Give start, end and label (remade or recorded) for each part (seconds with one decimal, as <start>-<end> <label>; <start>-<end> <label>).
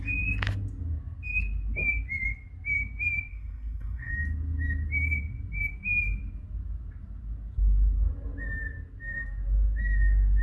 0.0-3.3 recorded; 3.3-4.1 remade; 4.1-10.4 recorded